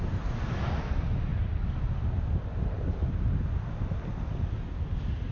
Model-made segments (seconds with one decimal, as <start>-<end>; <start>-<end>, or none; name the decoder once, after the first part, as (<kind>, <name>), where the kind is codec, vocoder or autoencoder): none